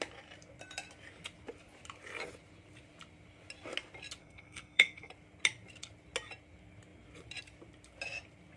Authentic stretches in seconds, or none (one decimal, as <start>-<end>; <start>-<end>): 0.0-4.2; 5.1-8.6